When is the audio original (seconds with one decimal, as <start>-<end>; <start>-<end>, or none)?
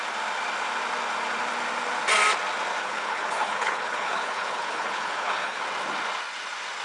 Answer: 0.0-2.8; 5.6-6.8